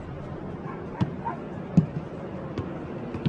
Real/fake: real